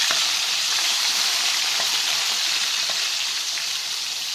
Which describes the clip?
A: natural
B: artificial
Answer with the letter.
B